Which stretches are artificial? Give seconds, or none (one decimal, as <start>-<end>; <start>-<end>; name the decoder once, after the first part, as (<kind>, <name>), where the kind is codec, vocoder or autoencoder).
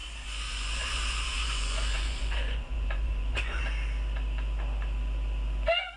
0.0-3.6 (vocoder, Vocos)